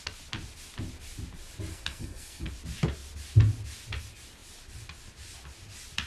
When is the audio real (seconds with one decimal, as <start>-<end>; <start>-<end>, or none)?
0.0-1.7; 2.5-6.1